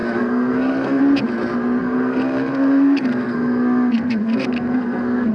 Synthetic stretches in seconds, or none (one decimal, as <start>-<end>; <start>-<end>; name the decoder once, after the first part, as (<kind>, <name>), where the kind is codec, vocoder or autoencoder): 0.0-1.0 (codec, SNAC); 1.8-5.3